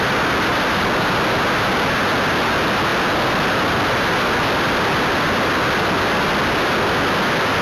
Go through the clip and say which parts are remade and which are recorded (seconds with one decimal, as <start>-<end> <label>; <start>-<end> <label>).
0.0-7.6 recorded